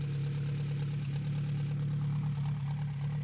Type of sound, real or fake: real